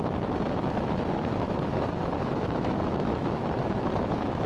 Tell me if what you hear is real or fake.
fake